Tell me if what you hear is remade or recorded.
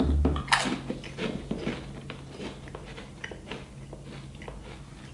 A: recorded